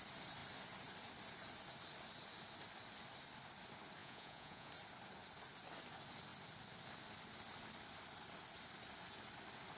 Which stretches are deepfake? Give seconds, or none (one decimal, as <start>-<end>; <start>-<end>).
4.0-4.7